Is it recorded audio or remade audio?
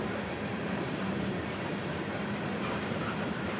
remade